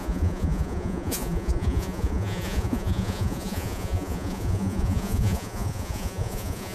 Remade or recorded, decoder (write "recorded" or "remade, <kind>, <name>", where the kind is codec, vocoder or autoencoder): remade, vocoder, Vocos